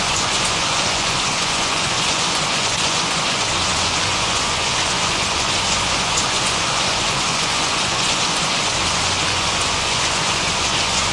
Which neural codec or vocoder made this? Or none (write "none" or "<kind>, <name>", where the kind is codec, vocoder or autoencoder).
vocoder, Vocos